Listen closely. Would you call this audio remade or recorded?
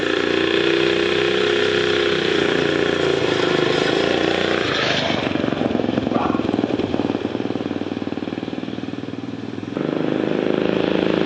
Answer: recorded